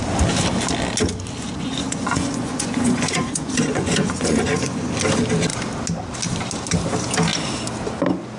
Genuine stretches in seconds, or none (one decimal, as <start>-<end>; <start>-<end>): 0.0-1.4; 4.9-8.4